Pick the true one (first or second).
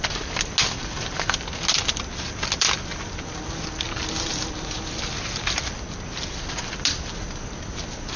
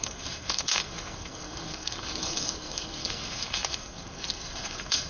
first